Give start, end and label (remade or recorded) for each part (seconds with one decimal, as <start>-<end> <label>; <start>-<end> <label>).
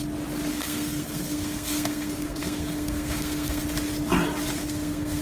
0.0-0.5 recorded; 0.5-3.6 remade; 3.6-4.6 recorded; 4.6-5.2 remade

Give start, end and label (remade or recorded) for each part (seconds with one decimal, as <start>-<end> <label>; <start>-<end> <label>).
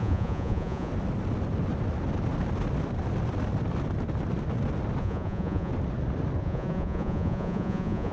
0.0-0.9 remade; 0.9-5.0 recorded; 5.0-5.7 remade; 5.7-6.4 recorded; 6.4-8.1 remade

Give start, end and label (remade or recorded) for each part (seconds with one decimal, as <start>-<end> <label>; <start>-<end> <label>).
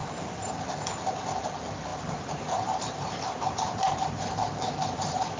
0.0-1.9 recorded; 1.9-5.4 remade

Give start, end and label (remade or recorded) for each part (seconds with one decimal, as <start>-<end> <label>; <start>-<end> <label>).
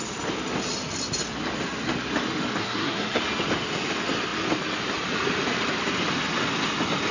0.0-2.6 recorded; 2.6-3.2 remade; 3.2-7.1 recorded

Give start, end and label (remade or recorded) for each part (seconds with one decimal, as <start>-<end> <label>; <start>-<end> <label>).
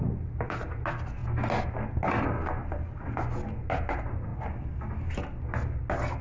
0.0-6.2 recorded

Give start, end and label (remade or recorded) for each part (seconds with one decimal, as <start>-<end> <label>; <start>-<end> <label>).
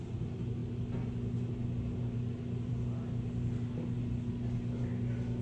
0.0-5.4 recorded